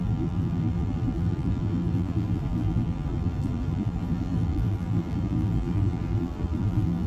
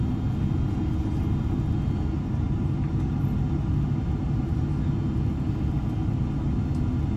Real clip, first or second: second